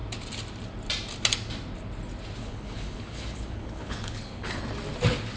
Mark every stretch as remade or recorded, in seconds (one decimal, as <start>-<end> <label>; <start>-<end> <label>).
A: 0.0-2.4 recorded; 2.4-4.6 remade; 4.6-5.4 recorded